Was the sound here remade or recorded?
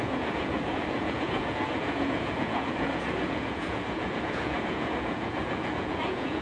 remade